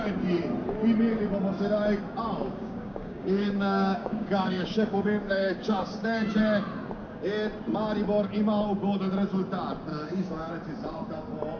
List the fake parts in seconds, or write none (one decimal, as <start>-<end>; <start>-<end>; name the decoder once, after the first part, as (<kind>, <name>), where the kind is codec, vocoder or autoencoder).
2.4-6.4 (codec, DAC); 9.9-10.5

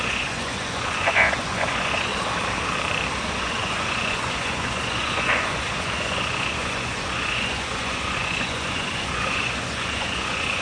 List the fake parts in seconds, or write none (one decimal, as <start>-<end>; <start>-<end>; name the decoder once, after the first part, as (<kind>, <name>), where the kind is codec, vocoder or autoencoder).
0.0-2.1 (vocoder, Vocos); 3.2-10.6